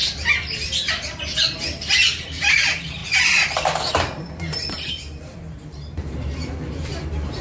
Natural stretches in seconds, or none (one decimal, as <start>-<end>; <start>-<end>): 0.0-2.2